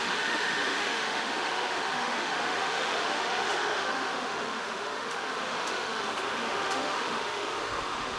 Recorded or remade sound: remade